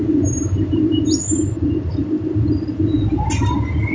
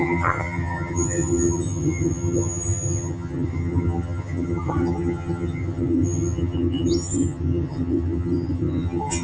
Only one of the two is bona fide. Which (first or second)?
first